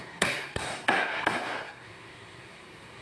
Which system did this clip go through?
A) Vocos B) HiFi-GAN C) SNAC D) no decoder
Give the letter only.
C